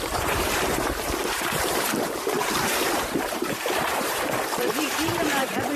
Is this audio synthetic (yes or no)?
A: yes